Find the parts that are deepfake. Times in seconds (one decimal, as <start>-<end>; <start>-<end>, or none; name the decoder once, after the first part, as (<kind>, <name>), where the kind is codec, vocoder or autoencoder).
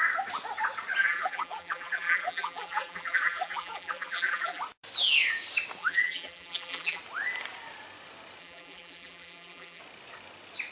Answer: 1.0-4.6 (vocoder, BigVGAN v2); 5.8-7.0; 8.4-9.8